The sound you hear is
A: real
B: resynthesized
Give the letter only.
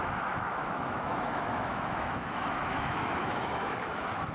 B